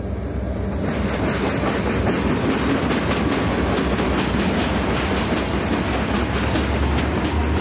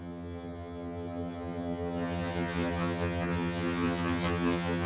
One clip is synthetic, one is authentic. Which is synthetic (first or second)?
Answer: second